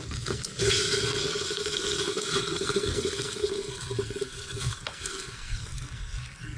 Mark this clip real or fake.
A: fake